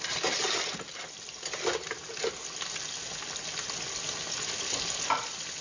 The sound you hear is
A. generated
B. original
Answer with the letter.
B